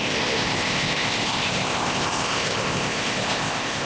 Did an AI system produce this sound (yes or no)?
yes